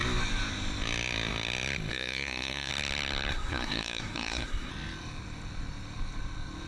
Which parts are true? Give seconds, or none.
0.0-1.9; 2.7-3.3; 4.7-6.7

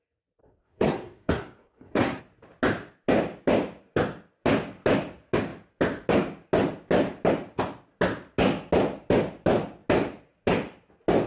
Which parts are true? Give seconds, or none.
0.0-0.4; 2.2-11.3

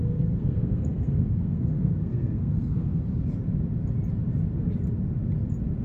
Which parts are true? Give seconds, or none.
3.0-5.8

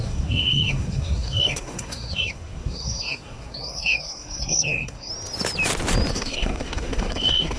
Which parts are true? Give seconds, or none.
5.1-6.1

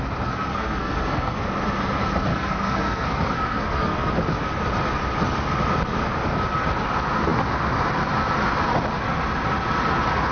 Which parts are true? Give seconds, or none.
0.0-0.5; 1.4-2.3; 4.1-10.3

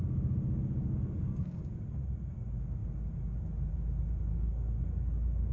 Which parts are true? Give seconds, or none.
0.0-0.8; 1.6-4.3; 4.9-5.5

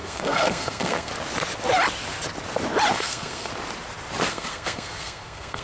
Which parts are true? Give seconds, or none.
1.1-2.9; 3.5-4.3

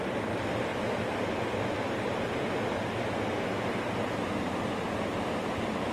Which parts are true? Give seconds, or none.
0.0-5.9